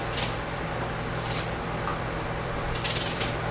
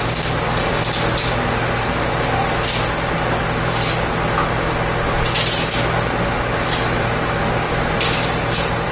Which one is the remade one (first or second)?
first